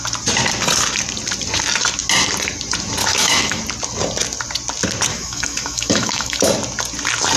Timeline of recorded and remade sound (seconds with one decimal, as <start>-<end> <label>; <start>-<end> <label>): 0.0-3.0 recorded; 3.0-3.6 remade; 3.6-5.1 recorded; 5.1-6.4 remade; 6.4-7.4 recorded